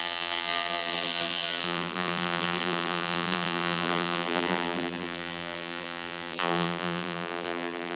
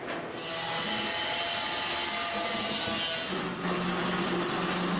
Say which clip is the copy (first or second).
first